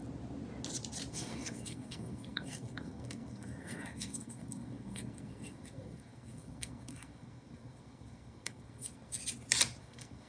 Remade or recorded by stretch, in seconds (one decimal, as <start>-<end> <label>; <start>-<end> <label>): 0.0-1.1 recorded; 1.1-9.2 remade; 9.2-9.8 recorded; 9.8-10.3 remade